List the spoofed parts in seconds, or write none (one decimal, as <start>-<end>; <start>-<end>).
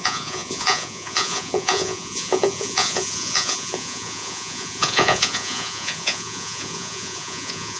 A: 0.0-7.8